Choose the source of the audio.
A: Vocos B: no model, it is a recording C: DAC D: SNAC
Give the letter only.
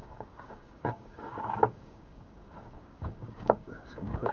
C